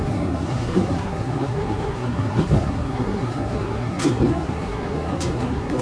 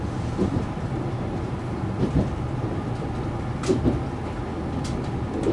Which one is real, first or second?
second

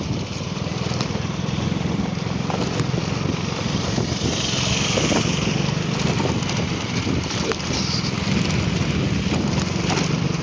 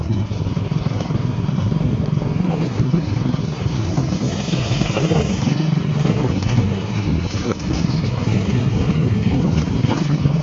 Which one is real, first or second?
first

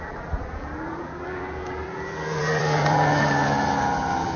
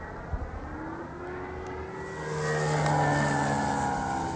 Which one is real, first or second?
second